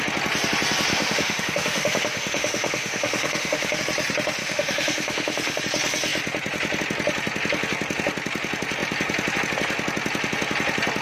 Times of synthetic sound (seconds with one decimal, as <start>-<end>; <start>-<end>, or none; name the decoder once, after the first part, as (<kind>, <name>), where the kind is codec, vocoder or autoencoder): 0.9-3.8 (autoencoder, DAC-VAE); 4.4-5.6

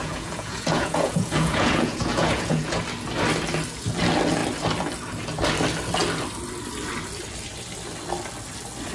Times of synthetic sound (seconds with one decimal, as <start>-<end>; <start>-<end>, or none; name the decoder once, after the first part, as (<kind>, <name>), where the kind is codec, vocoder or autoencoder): 0.0-2.8 (vocoder, Vocos)